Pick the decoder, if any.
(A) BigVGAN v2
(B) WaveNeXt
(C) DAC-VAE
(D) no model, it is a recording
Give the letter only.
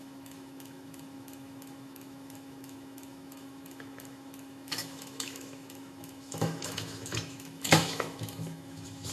C